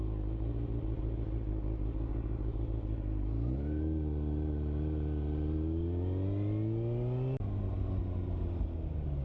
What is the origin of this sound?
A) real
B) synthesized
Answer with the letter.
A